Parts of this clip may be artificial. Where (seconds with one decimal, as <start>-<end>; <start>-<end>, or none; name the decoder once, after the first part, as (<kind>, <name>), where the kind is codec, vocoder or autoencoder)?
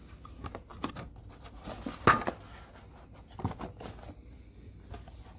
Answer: none